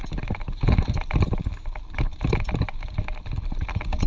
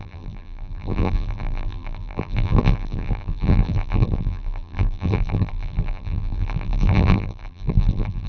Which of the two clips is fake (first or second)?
second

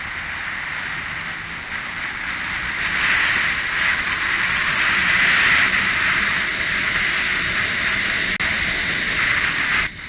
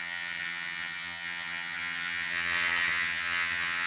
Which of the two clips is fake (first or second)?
second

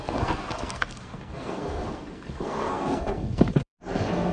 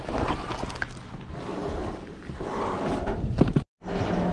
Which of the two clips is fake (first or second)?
first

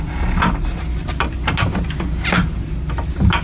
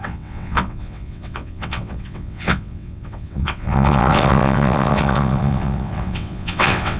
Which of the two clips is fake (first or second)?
second